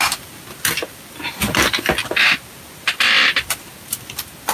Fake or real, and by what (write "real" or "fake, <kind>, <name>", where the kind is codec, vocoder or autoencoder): real